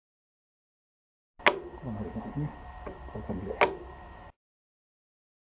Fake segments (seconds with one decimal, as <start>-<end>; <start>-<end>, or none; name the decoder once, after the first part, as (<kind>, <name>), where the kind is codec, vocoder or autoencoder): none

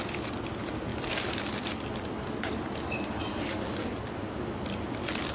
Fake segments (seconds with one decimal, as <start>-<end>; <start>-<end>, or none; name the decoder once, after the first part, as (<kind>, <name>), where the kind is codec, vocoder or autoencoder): none

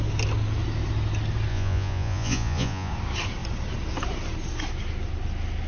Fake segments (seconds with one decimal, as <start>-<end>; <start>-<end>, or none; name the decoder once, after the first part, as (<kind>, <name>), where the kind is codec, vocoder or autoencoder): 1.5-2.9 (vocoder, Vocos)